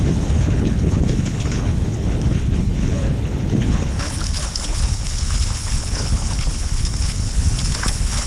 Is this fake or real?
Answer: fake